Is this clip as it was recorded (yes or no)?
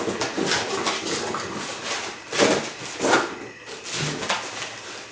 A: yes